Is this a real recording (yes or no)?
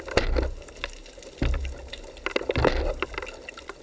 yes